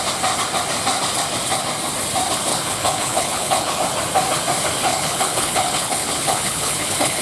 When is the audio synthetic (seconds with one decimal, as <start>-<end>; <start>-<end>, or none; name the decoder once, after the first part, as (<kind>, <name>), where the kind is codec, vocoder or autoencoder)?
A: 2.5-3.8 (codec, HILCodec); 4.9-7.2